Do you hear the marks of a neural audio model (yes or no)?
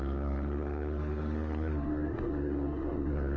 yes